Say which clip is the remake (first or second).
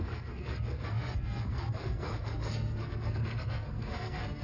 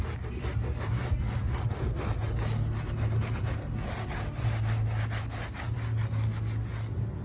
first